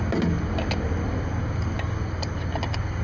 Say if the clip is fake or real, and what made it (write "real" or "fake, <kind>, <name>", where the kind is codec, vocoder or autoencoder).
real